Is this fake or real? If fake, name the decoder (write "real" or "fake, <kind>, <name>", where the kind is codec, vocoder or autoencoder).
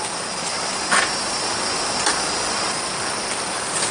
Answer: real